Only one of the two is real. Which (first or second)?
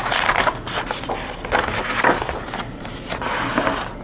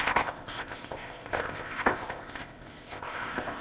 first